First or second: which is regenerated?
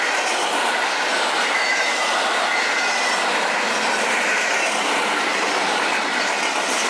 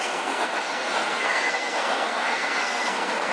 second